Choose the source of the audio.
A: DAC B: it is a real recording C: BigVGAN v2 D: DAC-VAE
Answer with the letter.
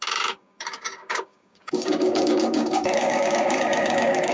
A